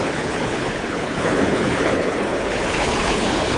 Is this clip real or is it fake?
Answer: fake